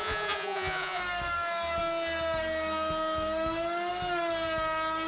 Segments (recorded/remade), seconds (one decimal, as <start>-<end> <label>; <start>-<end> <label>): 0.0-1.0 remade; 1.0-5.1 recorded